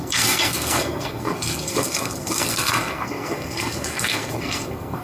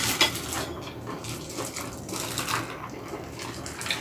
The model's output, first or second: first